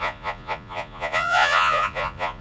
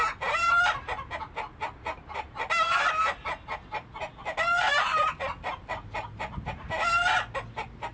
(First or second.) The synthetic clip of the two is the first